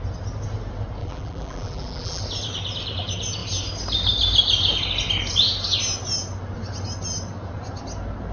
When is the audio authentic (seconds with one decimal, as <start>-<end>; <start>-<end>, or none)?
0.0-1.0; 2.2-8.3